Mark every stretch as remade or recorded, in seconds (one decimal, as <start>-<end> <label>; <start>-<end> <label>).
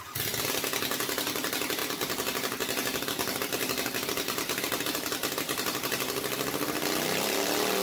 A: 0.0-7.8 recorded